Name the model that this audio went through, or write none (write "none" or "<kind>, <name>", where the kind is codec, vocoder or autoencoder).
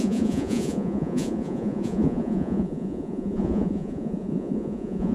vocoder, Vocos